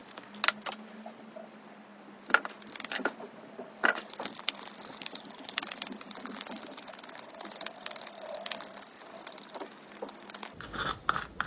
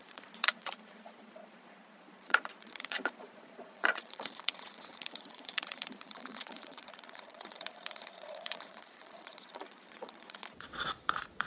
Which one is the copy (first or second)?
second